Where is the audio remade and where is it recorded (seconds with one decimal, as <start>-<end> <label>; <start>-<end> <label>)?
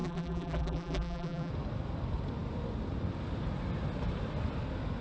0.0-1.5 remade; 1.5-5.0 recorded